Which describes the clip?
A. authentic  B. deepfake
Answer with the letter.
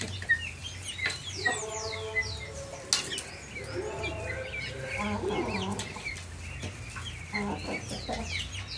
A